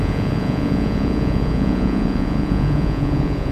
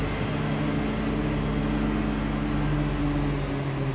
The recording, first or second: second